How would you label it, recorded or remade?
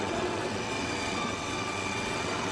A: remade